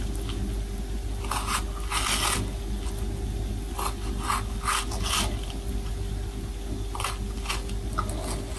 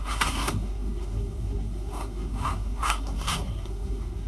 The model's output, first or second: second